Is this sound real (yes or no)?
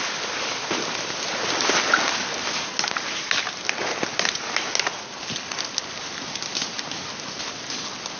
yes